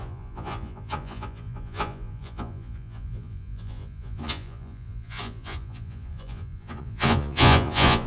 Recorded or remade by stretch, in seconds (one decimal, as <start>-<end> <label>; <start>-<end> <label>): 0.0-8.1 remade